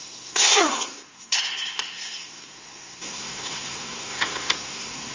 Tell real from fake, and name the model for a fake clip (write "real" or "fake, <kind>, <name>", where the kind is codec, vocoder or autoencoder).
fake, codec, SNAC